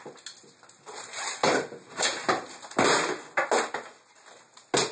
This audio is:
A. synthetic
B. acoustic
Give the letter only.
B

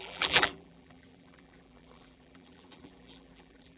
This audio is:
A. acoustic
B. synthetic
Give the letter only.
B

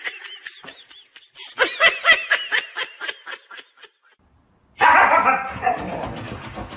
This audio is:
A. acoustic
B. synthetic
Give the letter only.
A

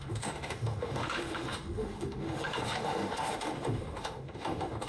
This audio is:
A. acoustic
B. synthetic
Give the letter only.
B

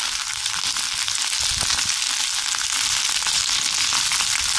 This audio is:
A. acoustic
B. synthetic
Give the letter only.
A